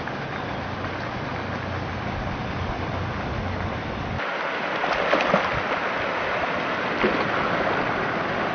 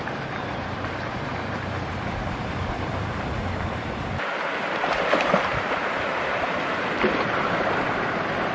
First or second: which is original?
first